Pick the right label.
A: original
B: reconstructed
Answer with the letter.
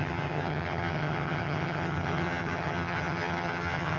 B